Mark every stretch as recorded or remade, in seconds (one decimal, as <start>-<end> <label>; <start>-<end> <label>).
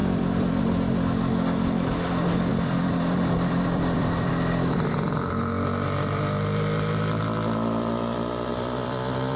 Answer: 0.0-0.6 remade; 0.6-2.5 recorded; 2.5-4.3 remade; 4.3-8.5 recorded; 8.5-9.4 remade